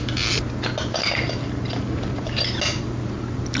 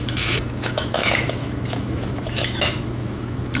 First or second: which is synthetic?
second